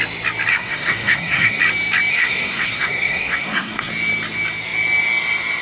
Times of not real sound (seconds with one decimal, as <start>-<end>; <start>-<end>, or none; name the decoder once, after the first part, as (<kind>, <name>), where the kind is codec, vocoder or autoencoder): 0.5-1.6 (codec, SNAC); 2.1-3.9